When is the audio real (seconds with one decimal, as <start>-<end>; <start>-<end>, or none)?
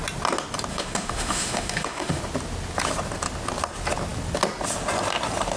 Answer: 0.0-0.7; 2.2-5.6